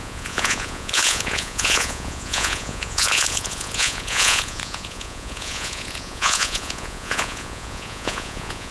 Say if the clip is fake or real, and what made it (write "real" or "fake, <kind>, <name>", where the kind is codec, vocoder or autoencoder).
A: fake, vocoder, Vocos